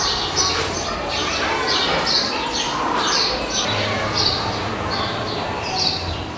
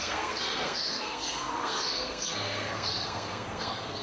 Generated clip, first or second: second